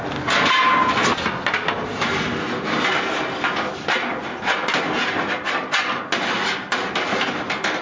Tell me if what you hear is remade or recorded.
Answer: recorded